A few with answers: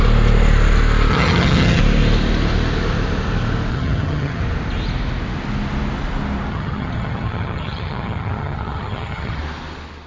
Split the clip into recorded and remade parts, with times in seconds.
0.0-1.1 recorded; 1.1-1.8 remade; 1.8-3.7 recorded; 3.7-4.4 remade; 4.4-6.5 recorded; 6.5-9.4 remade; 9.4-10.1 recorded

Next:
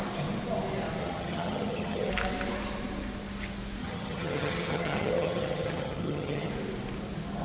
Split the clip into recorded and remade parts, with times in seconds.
0.0-1.0 recorded; 1.0-2.1 remade; 2.1-3.8 recorded; 3.8-6.5 remade; 6.5-7.4 recorded

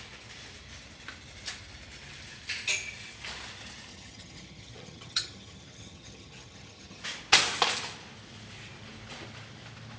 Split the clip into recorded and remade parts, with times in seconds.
0.0-3.9 recorded; 3.9-7.0 remade; 7.0-10.0 recorded

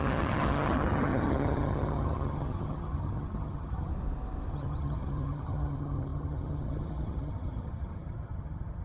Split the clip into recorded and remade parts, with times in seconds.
0.0-3.9 remade; 3.9-4.5 recorded; 4.5-8.8 remade